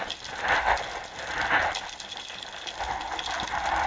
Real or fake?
real